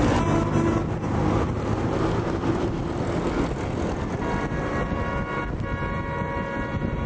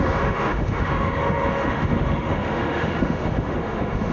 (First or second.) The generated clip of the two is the second